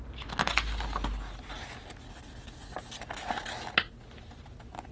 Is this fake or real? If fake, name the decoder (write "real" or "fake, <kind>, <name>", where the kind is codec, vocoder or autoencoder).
real